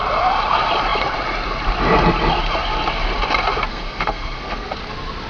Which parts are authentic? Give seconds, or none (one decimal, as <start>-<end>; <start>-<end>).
0.0-3.7; 4.8-5.3